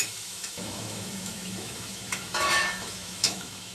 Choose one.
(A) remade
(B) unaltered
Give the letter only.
A